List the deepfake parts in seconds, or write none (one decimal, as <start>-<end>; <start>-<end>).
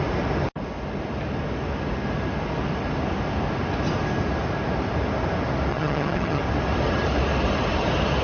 5.7-6.4